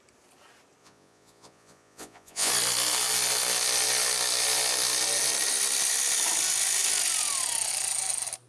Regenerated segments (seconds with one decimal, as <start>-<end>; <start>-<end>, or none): 0.8-2.5